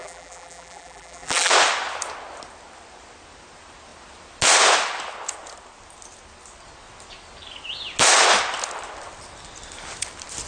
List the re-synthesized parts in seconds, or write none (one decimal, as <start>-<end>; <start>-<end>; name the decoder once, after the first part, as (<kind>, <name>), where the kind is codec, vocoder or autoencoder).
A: 0.0-1.5 (vocoder, BigVGAN v2)